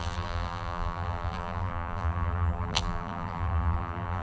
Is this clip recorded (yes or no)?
no